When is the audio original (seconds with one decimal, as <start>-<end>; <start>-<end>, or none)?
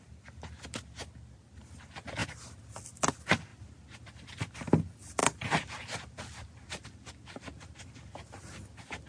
0.0-5.2; 6.7-9.1